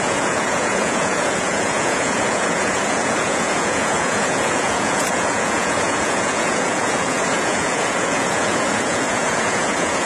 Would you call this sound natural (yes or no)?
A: no